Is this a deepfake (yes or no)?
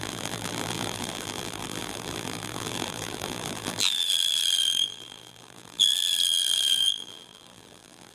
yes